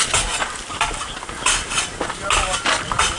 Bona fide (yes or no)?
yes